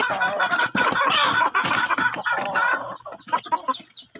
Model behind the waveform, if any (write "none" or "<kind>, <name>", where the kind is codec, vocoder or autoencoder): none